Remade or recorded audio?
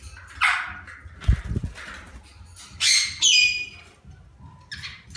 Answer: recorded